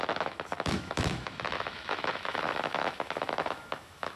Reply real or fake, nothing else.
fake